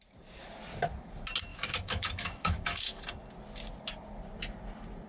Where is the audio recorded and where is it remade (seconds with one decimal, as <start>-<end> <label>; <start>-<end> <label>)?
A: 0.0-1.5 recorded; 1.5-3.0 remade; 3.0-5.1 recorded